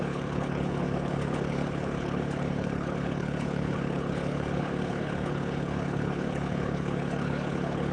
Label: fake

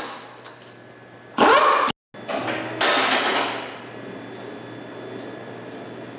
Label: real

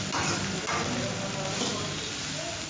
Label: real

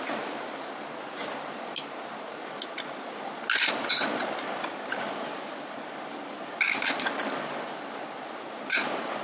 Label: real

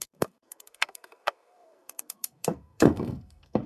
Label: fake